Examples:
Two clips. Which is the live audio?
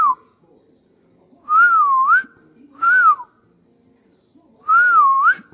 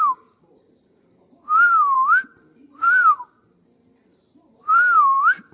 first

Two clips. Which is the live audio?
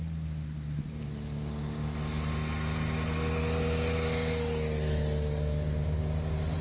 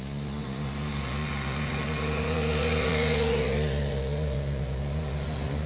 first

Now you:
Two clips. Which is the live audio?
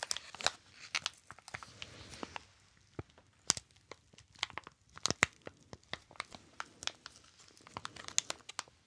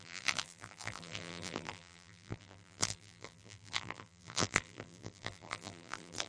first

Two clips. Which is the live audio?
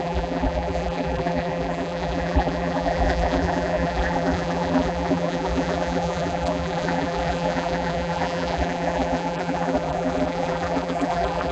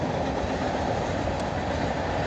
second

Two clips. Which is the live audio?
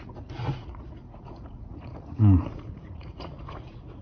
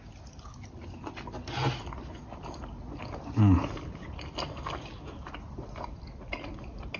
second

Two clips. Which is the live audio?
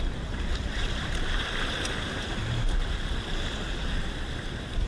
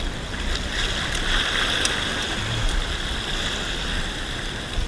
second